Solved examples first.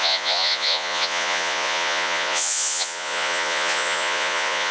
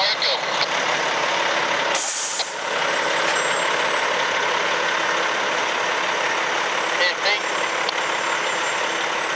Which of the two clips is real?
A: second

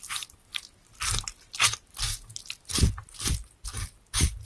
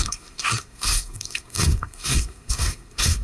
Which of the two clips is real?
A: first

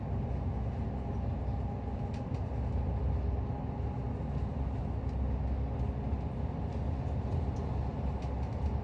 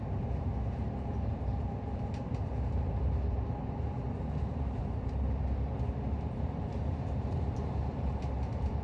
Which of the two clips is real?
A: first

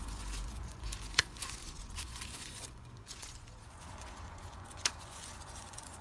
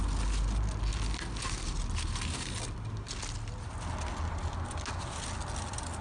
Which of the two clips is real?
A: second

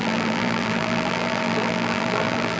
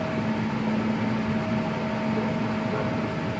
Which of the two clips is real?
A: second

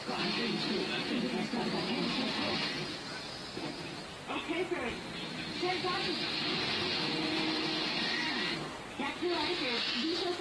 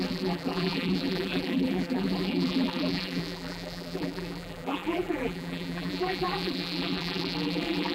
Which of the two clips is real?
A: first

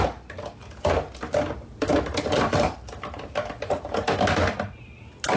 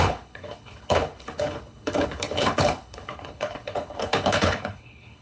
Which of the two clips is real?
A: first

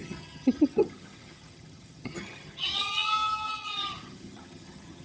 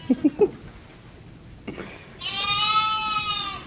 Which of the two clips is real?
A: second